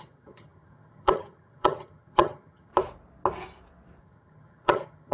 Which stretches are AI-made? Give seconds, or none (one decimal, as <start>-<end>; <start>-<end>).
0.0-2.7; 4.0-5.1